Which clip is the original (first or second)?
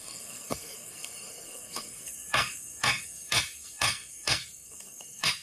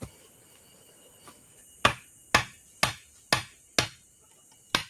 second